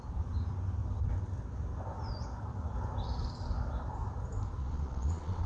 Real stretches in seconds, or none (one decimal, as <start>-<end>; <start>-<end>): 0.0-4.6